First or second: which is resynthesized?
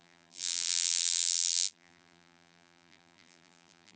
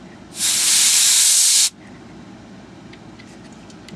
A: first